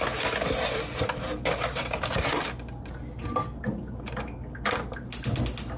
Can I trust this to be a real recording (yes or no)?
yes